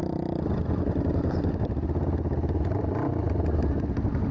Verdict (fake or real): real